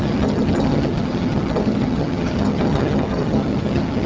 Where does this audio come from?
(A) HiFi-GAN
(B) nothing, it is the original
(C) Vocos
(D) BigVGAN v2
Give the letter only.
A